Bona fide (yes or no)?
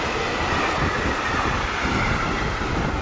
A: yes